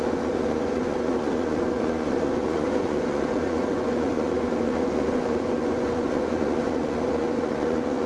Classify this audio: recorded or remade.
remade